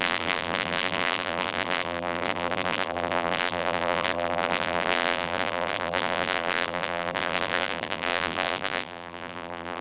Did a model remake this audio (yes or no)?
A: yes